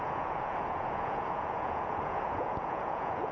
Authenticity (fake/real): fake